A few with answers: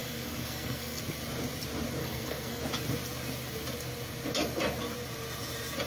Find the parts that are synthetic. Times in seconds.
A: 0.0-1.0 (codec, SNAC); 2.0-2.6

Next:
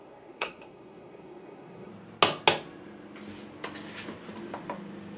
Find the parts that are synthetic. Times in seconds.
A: 0.0-1.9 (codec, SNAC)